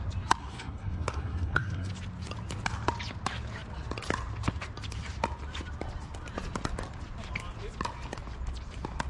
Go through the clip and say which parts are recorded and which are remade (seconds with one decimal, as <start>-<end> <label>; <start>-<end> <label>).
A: 0.0-0.4 recorded; 0.4-1.9 remade; 1.9-9.1 recorded